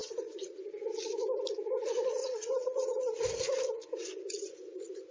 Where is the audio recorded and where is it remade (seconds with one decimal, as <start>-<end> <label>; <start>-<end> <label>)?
0.0-0.6 remade; 0.6-2.2 recorded; 2.2-3.0 remade; 3.0-5.1 recorded